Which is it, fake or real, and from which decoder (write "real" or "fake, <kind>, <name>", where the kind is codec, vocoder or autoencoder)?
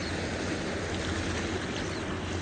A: real